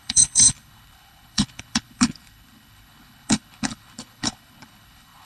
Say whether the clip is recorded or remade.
remade